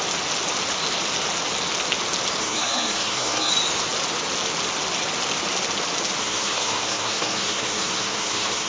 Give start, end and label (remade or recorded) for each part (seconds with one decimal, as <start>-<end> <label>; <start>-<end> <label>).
0.0-2.4 recorded; 2.4-3.5 remade; 3.5-6.2 recorded; 6.2-8.7 remade